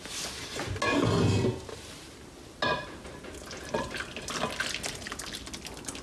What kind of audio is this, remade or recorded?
recorded